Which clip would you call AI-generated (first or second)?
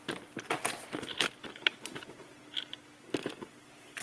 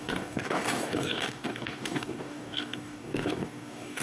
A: second